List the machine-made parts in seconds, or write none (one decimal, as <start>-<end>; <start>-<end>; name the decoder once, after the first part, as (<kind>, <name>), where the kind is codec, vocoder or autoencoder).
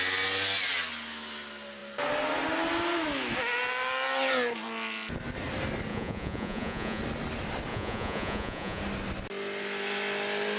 5.9-7.0 (vocoder, Vocos); 7.7-8.8